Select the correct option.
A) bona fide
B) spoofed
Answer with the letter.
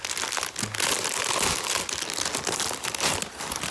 A